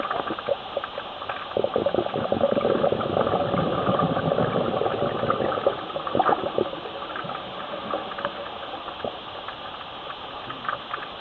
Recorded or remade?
recorded